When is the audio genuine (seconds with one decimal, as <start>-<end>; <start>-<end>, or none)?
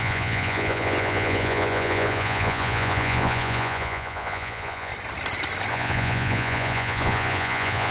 4.9-5.7